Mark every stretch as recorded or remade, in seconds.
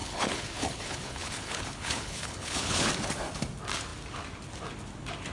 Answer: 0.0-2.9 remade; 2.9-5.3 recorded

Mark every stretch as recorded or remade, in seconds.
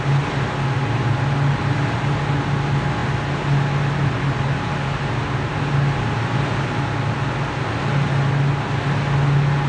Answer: 0.0-9.7 recorded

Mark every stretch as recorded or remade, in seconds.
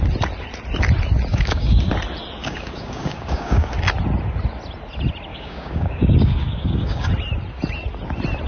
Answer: 0.0-1.3 recorded; 1.3-1.9 remade; 1.9-2.4 recorded; 2.4-3.7 remade; 3.7-5.3 recorded; 5.3-7.1 remade; 7.1-8.5 recorded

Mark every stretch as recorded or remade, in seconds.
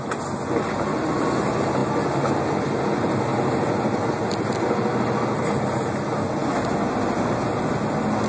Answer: 0.0-8.3 recorded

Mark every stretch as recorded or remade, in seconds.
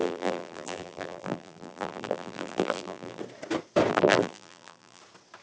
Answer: 0.0-3.2 remade; 3.2-3.9 recorded; 3.9-5.0 remade; 5.0-5.4 recorded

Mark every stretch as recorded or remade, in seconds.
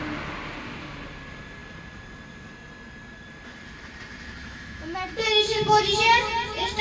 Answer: 0.0-4.4 recorded; 4.4-5.8 remade; 5.8-6.8 recorded